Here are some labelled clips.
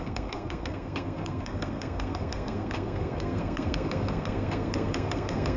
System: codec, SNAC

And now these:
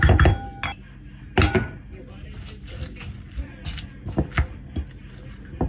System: none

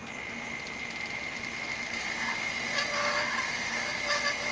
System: none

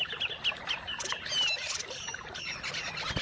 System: none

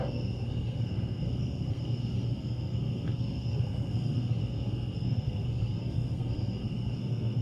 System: codec, SNAC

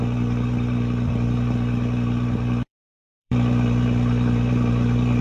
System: vocoder, BigVGAN v2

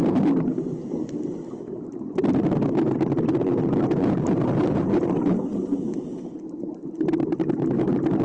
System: none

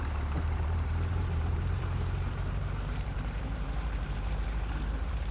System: vocoder, BigVGAN v2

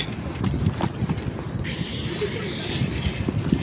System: none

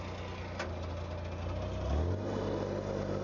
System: none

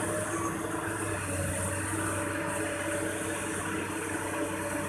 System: none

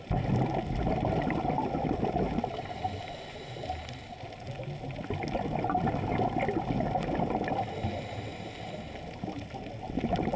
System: none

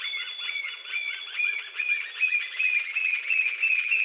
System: vocoder, Vocos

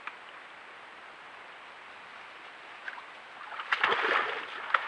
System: none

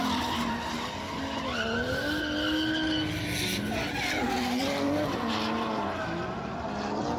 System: none